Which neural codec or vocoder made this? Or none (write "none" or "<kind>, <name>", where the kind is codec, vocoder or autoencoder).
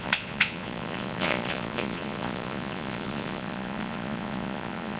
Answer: vocoder, Vocos